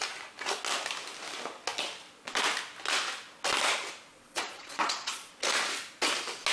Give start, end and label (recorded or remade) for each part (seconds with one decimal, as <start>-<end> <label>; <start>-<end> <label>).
0.0-4.1 recorded; 4.1-5.3 remade; 5.3-6.5 recorded